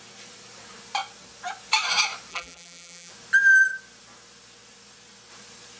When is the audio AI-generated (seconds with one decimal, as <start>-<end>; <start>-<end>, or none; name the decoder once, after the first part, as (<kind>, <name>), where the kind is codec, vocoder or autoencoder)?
2.3-3.1 (vocoder, BigVGAN v2)